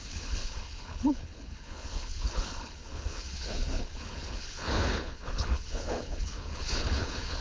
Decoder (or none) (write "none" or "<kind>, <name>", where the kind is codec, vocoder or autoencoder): codec, HILCodec